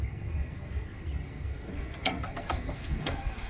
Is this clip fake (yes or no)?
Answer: yes